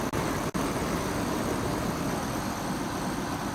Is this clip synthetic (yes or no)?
no